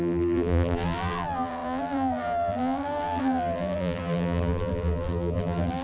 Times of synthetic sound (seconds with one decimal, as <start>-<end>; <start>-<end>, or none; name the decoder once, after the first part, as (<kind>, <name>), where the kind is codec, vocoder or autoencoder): 0.0-5.8 (vocoder, BigVGAN v2)